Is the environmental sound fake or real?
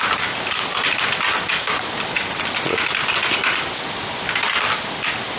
real